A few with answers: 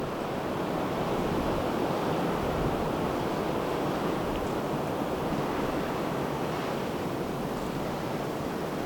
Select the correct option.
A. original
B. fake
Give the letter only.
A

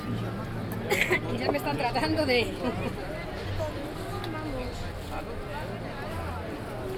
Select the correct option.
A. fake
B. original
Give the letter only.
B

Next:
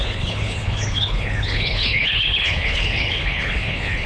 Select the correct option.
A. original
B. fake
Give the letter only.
B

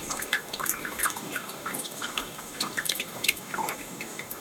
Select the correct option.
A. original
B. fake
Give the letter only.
B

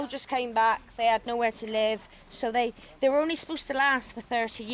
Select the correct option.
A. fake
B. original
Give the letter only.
B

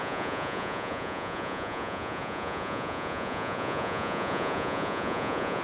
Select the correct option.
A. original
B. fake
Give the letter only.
B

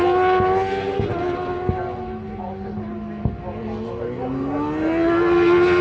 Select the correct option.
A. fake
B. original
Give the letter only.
B